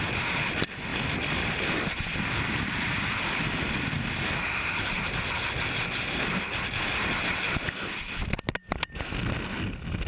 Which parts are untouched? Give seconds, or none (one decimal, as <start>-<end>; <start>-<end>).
0.0-10.1